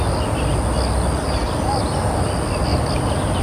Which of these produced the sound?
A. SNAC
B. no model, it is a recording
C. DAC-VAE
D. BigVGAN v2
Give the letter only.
B